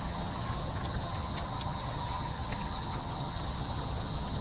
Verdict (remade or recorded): remade